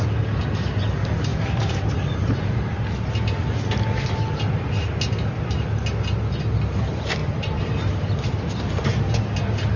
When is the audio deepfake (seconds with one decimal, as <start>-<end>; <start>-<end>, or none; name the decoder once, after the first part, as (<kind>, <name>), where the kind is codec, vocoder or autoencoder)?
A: 1.3-3.1 (vocoder, BigVGAN v2); 7.2-9.1